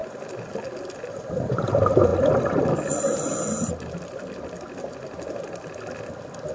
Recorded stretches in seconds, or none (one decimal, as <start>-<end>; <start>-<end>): 0.0-6.5